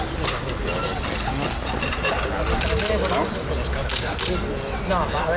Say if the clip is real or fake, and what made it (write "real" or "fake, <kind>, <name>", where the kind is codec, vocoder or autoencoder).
real